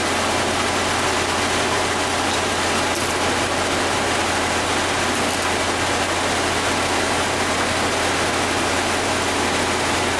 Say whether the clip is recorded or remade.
recorded